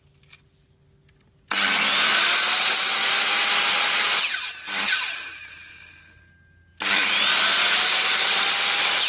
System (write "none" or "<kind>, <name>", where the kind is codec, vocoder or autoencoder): none